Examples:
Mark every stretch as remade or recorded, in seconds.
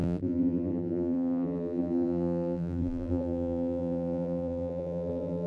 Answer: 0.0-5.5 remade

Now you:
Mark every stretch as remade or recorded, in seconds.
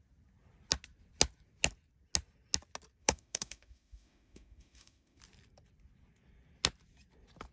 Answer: 0.0-3.0 recorded; 3.0-5.2 remade; 5.2-7.5 recorded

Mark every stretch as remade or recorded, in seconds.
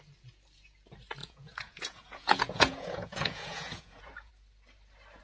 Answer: 0.0-1.2 recorded; 1.2-4.3 remade; 4.3-5.2 recorded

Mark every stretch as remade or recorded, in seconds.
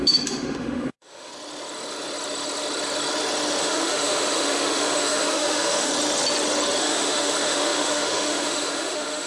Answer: 0.0-1.3 remade; 1.3-3.6 recorded; 3.6-5.9 remade; 5.9-6.8 recorded; 6.8-9.3 remade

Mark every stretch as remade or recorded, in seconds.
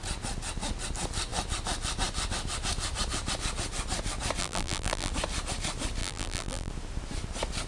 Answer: 0.0-4.4 recorded; 4.4-5.1 remade; 5.1-6.0 recorded; 6.0-6.7 remade; 6.7-7.7 recorded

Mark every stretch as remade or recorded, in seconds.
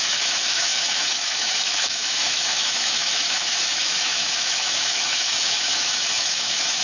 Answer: 0.0-6.8 remade